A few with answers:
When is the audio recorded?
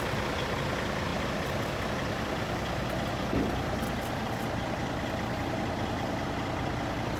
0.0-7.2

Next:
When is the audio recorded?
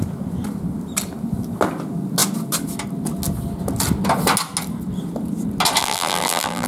0.0-5.8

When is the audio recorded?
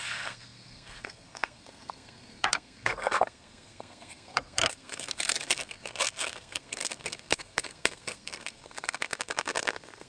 none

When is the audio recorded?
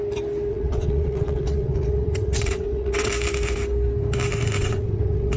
0.0-0.5; 3.1-4.6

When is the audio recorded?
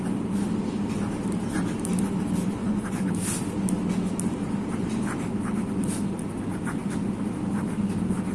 0.0-2.6; 3.1-8.3